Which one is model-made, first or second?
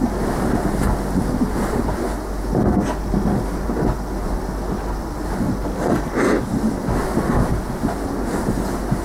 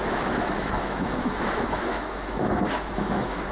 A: second